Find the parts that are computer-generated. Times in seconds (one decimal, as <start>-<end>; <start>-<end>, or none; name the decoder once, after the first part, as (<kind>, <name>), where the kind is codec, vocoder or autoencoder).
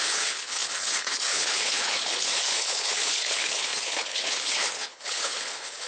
0.0-5.9 (codec, HILCodec)